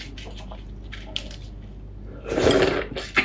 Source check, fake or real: real